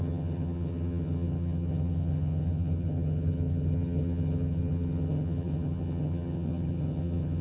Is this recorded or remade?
remade